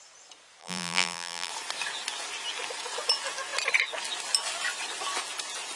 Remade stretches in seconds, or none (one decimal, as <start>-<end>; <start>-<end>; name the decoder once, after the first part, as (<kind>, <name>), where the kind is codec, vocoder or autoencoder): 0.6-1.5 (vocoder, BigVGAN v2)